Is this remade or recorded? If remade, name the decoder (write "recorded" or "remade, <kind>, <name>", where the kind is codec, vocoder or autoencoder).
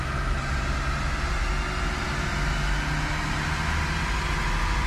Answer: recorded